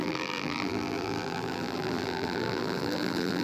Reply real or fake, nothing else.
fake